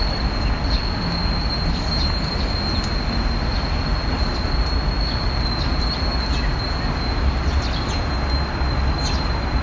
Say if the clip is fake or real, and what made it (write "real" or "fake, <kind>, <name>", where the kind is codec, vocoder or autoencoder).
real